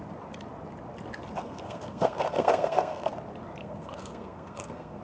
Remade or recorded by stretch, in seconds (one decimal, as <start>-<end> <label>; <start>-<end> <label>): 0.0-1.4 recorded; 1.4-3.1 remade; 3.1-3.6 recorded; 3.6-5.0 remade